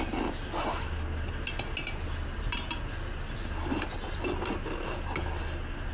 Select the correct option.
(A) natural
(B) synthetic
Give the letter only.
A